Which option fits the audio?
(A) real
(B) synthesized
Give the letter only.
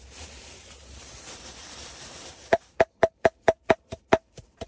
B